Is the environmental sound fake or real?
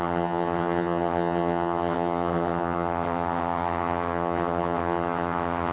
fake